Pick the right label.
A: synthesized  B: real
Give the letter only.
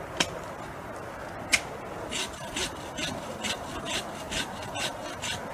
B